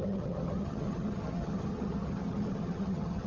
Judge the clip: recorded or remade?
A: remade